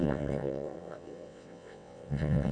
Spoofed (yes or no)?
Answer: yes